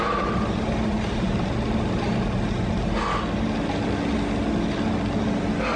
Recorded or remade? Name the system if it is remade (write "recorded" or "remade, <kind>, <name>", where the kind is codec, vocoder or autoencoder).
recorded